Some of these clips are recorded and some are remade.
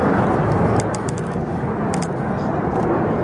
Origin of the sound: recorded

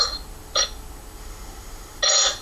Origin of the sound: recorded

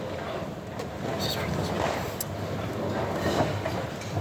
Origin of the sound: recorded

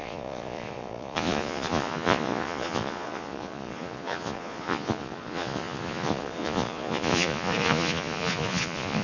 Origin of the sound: remade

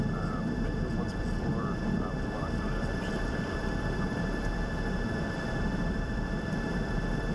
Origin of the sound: remade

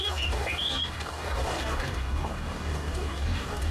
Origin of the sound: remade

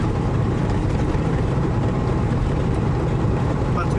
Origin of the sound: remade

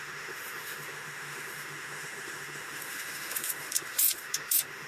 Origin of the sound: remade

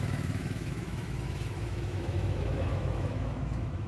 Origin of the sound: remade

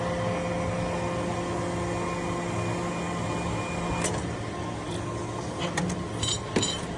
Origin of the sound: recorded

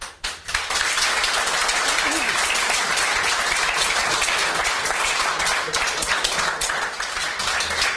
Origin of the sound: recorded